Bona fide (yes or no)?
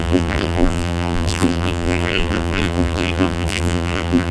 no